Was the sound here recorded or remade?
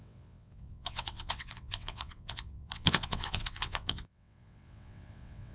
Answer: remade